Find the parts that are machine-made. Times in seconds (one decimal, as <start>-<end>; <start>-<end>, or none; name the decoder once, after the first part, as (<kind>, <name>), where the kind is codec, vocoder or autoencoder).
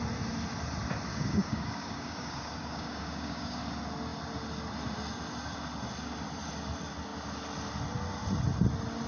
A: 1.1-3.6 (codec, DAC)